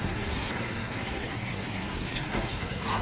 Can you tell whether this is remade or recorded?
remade